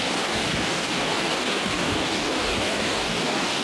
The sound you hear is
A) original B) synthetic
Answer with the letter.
B